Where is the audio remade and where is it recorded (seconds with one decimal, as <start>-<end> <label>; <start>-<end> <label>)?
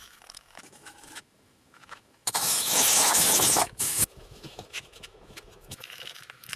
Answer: 0.0-6.6 remade